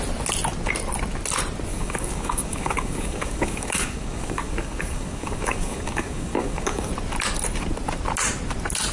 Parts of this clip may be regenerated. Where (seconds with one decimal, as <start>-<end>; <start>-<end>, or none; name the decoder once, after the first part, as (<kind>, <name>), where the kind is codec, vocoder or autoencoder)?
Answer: 1.7-6.9 (codec, DAC)